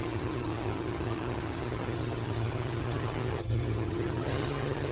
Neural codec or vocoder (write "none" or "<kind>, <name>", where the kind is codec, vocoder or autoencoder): vocoder, HiFi-GAN